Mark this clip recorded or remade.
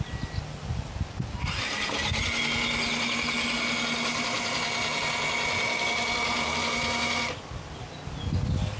recorded